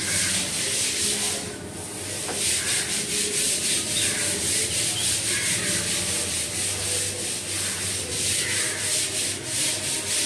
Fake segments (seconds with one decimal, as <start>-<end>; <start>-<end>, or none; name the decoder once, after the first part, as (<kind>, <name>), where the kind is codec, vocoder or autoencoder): none